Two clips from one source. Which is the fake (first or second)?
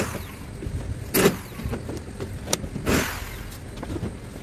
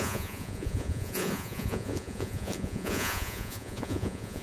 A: second